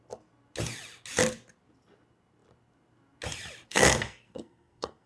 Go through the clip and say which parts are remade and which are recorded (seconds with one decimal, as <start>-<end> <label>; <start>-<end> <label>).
0.0-3.7 recorded; 3.7-5.1 remade